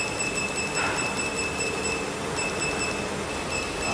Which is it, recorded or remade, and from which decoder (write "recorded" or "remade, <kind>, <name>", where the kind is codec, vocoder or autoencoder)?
recorded